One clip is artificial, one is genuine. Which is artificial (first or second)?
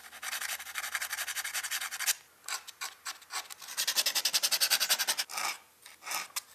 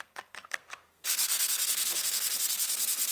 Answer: second